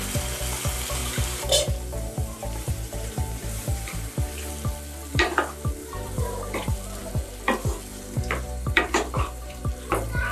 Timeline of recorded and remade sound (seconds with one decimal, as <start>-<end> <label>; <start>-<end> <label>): 0.0-1.0 recorded; 1.0-4.5 remade; 4.5-5.8 recorded; 5.8-7.1 remade; 7.1-7.9 recorded; 7.9-9.6 remade; 9.6-10.3 recorded